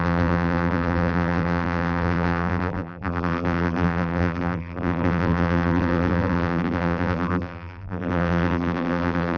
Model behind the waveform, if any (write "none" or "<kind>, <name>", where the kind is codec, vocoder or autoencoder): vocoder, BigVGAN v2